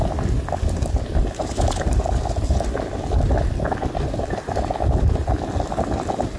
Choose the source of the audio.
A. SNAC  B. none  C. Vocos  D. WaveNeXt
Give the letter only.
B